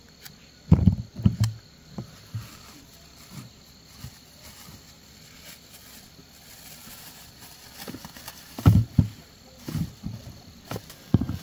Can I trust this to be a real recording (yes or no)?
yes